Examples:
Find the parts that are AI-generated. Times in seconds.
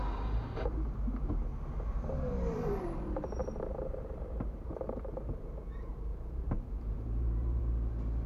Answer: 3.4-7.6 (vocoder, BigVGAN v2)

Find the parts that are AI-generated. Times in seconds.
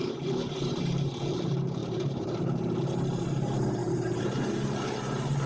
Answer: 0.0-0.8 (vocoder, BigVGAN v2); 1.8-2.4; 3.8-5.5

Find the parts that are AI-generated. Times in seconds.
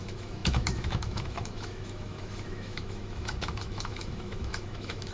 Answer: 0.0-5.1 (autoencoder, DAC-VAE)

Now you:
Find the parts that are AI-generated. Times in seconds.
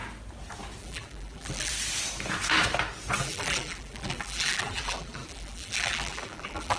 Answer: 0.8-1.7 (vocoder, BigVGAN v2); 3.2-6.8